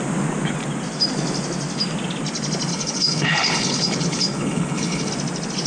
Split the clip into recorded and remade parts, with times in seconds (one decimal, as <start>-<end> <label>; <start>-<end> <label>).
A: 0.0-2.7 recorded; 2.7-5.1 remade; 5.1-5.7 recorded